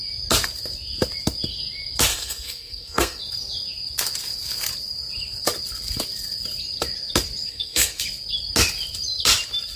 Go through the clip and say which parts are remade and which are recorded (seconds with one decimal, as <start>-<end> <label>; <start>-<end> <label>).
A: 0.0-2.1 recorded; 2.1-3.2 remade; 3.2-7.5 recorded; 7.5-8.0 remade; 8.0-9.8 recorded